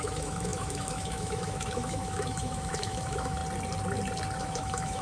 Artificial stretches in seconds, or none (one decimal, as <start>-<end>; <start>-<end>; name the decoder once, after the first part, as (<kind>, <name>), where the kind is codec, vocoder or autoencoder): 0.0-3.4 (autoencoder, DAC-VAE); 4.4-5.0